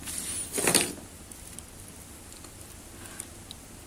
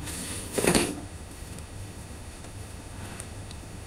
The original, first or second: first